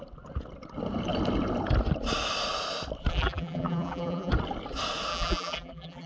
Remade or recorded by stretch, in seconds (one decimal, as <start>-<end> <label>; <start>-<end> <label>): 0.0-3.1 recorded; 3.1-4.3 remade; 4.3-5.1 recorded; 5.1-6.1 remade

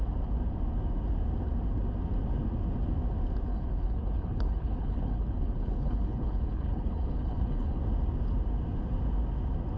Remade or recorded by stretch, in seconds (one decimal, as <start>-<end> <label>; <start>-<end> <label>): 0.0-3.5 recorded; 3.5-7.8 remade; 7.8-9.8 recorded